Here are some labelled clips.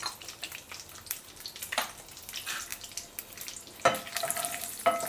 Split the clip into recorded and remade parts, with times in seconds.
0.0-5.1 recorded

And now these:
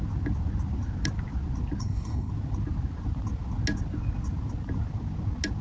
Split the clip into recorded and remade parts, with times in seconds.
0.0-1.8 recorded; 1.8-2.3 remade; 2.3-5.6 recorded

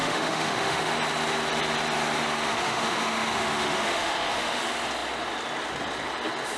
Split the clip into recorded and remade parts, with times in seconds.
0.0-0.9 remade; 0.9-2.5 recorded; 2.5-4.6 remade; 4.6-6.6 recorded

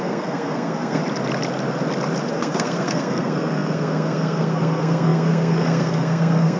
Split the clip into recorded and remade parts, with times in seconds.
0.0-1.0 remade; 1.0-2.3 recorded; 2.3-6.6 remade

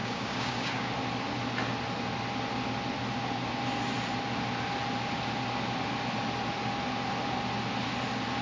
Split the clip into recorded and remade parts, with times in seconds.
0.0-0.9 remade; 0.9-8.4 recorded

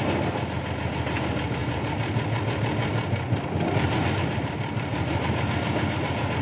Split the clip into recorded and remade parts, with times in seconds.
0.0-1.6 recorded; 1.6-2.4 remade; 2.4-4.0 recorded; 4.0-5.5 remade; 5.5-6.4 recorded